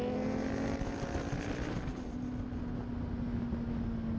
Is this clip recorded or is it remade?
recorded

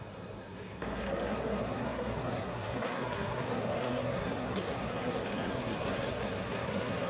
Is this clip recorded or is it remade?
remade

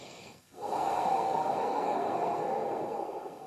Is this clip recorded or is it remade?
remade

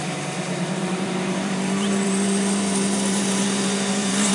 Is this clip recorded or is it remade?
remade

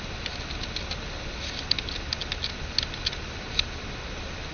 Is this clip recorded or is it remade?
recorded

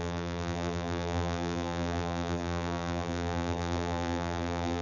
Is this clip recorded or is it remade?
remade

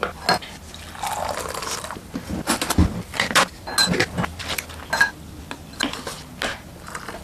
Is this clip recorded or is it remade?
recorded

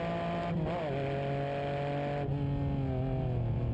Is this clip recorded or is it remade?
recorded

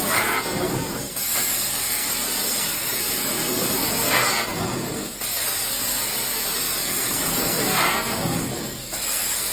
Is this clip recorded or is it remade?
remade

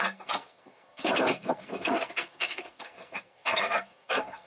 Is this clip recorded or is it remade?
remade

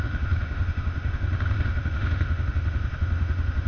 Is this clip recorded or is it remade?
remade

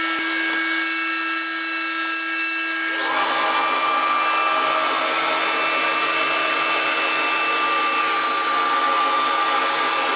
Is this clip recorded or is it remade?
recorded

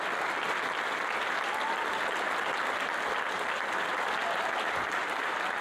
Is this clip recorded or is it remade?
recorded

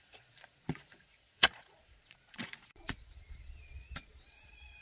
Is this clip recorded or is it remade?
remade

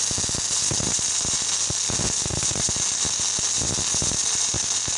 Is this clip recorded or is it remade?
recorded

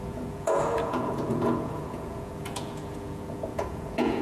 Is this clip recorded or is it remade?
remade